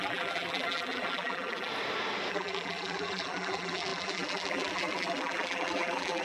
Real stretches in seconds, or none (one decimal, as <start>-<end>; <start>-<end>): 1.7-2.3